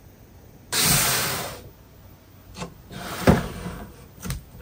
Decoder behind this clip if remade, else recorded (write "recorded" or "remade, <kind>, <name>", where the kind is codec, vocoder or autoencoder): remade, vocoder, BigVGAN v2